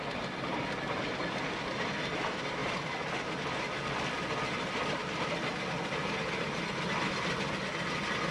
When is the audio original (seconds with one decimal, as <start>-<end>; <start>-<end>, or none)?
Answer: 0.0-8.3

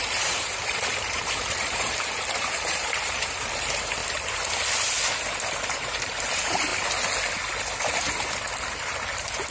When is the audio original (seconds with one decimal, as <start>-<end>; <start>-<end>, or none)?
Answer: 4.0-5.7; 6.7-9.5

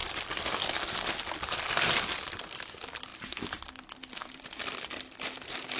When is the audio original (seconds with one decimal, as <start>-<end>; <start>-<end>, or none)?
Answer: 1.4-3.1; 5.1-5.8

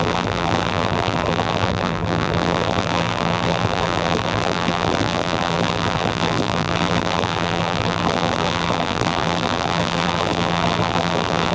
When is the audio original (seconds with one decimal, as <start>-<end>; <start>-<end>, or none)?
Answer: none

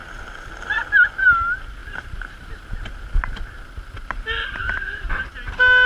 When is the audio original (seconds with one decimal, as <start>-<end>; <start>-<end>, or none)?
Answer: 0.9-1.8; 3.2-5.9

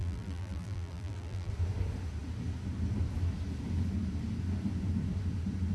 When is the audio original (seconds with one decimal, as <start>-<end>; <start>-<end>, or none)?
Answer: 1.5-5.7